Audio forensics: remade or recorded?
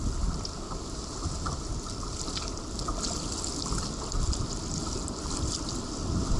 recorded